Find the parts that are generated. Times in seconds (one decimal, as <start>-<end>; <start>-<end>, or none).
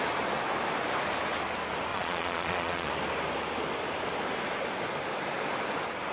1.9-2.9